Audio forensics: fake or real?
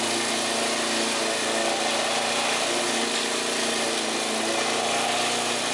real